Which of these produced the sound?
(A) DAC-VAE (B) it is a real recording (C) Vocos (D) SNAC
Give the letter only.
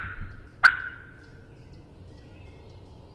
B